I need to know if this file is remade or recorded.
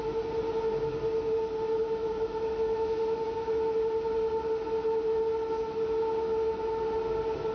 recorded